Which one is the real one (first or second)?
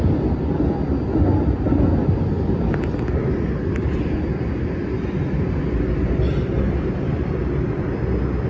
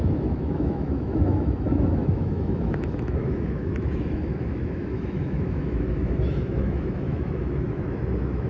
first